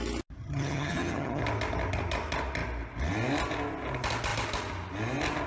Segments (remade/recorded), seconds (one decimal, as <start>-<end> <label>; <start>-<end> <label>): 0.0-0.4 recorded; 0.4-1.4 remade; 1.4-5.5 recorded